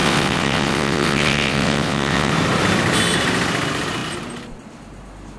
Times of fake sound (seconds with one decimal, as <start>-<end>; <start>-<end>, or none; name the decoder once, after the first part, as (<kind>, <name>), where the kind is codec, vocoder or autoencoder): 0.0-2.3 (vocoder, WaveNeXt)